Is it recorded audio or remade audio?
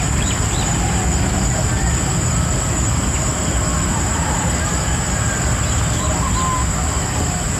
recorded